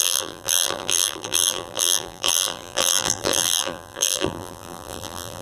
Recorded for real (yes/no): no